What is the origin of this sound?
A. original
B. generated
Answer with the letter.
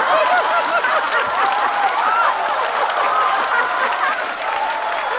B